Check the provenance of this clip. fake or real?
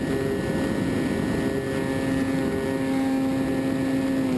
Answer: real